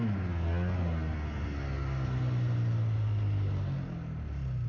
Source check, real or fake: real